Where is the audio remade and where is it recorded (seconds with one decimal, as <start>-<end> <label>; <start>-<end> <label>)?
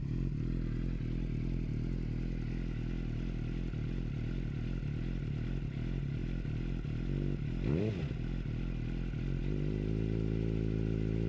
0.0-11.3 recorded